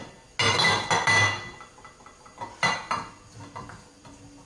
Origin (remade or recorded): recorded